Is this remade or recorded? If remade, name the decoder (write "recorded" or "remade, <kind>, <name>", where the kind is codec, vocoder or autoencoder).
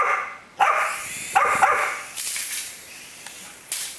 remade, vocoder, BigVGAN v2